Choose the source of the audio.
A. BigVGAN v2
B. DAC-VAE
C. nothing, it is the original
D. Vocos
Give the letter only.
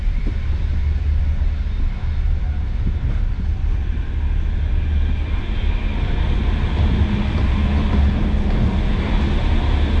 C